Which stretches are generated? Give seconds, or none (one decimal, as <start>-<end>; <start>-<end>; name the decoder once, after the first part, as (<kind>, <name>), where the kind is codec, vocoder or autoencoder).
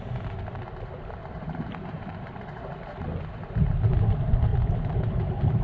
1.2-3.5 (vocoder, BigVGAN v2); 4.5-5.6